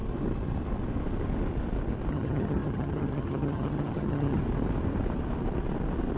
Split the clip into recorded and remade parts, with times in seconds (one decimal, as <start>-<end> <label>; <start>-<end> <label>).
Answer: 0.0-2.1 recorded; 2.1-4.4 remade; 4.4-6.2 recorded